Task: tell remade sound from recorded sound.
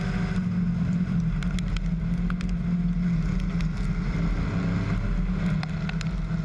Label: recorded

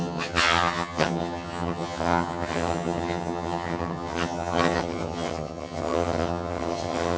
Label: remade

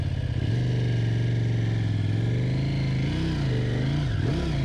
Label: recorded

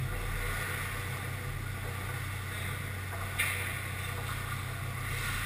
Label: recorded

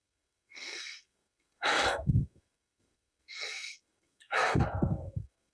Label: remade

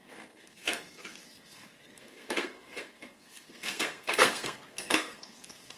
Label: remade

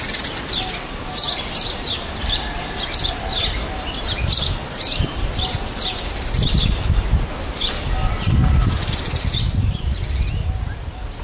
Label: recorded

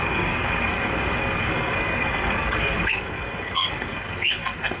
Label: remade